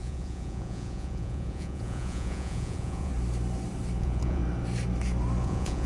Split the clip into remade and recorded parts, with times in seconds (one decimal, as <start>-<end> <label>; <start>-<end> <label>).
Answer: 0.0-3.1 remade; 3.1-4.0 recorded; 4.0-4.4 remade; 4.4-5.4 recorded; 5.4-5.9 remade